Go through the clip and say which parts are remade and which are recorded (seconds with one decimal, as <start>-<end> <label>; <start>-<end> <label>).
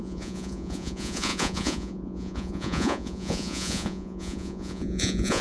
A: 0.0-5.4 remade